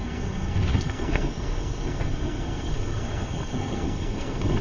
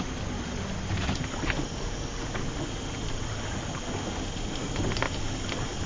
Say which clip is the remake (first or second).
first